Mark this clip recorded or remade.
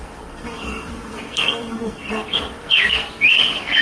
remade